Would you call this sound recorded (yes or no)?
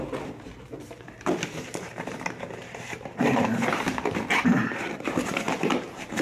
no